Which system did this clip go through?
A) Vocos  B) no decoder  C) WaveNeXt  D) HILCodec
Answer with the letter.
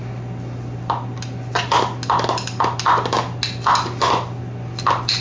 B